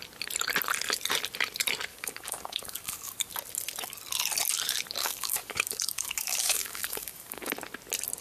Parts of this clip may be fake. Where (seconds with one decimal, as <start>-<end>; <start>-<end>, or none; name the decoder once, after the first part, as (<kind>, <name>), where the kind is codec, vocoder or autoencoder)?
1.9-3.3 (codec, DAC); 5.0-7.5